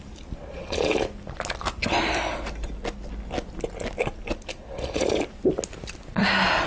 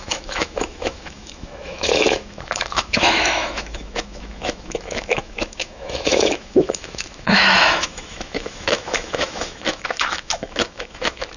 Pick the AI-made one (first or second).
second